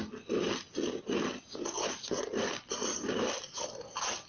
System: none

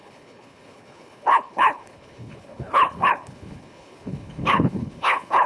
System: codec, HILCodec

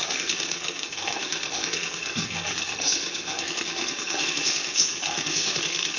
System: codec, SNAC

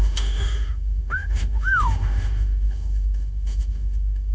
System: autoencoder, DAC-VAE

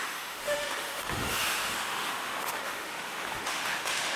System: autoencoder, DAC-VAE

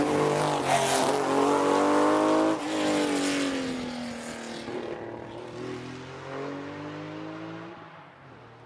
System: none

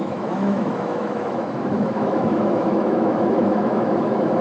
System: autoencoder, DAC-VAE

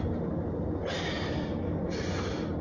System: none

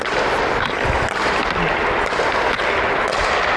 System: none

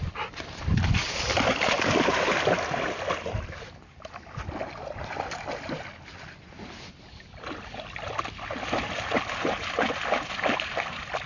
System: none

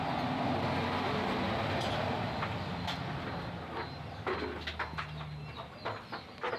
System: none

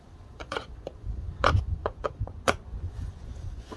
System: vocoder, Vocos